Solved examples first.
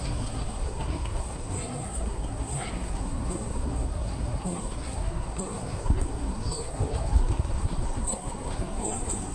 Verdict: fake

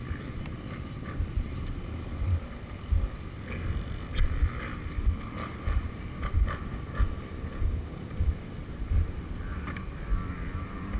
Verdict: real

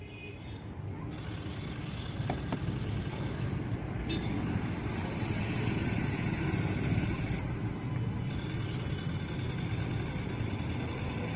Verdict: real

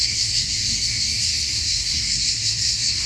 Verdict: fake